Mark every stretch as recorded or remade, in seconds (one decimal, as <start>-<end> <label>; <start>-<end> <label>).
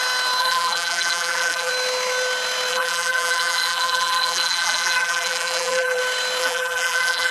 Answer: 0.0-0.4 recorded; 0.4-1.7 remade; 1.7-2.7 recorded; 2.7-6.0 remade; 6.0-6.4 recorded; 6.4-7.3 remade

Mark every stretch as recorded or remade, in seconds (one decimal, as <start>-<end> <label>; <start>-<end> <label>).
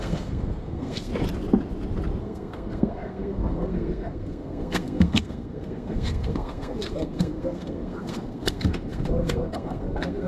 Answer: 0.0-1.1 remade; 1.1-2.2 recorded; 2.2-10.3 remade